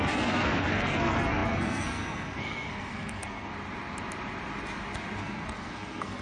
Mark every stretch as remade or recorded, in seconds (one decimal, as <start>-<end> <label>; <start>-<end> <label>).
0.0-3.5 remade; 3.5-5.2 recorded; 5.2-6.2 remade